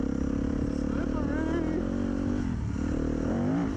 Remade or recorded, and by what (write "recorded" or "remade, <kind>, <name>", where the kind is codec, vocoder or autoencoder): recorded